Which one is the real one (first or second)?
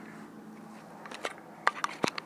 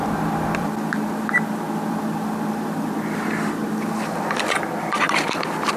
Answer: first